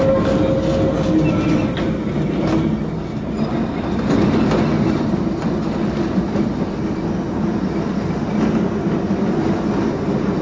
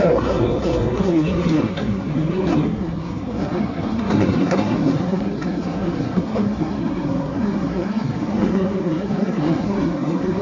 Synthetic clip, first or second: second